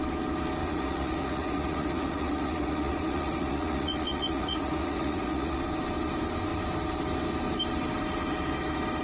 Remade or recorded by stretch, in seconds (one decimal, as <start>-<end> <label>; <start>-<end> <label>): 0.0-0.6 recorded; 0.6-5.6 remade; 5.6-9.0 recorded